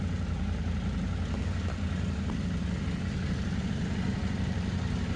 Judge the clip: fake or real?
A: real